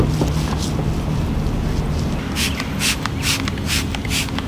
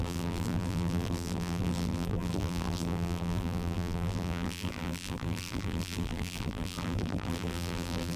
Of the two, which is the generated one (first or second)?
second